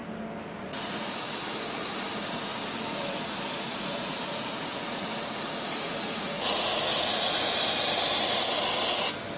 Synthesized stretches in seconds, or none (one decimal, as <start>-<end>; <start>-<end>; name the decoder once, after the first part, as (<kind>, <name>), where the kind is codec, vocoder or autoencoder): 0.6-7.5 (vocoder, Vocos)